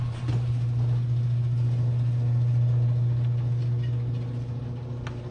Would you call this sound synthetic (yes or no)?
no